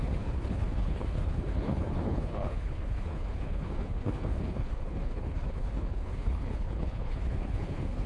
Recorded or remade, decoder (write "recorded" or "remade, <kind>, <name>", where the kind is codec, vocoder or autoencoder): remade, codec, HILCodec